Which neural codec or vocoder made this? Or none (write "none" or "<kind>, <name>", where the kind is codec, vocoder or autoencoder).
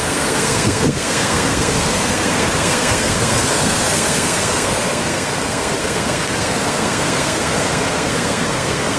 codec, SNAC